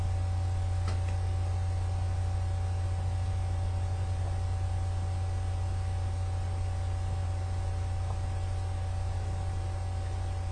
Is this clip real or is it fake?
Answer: real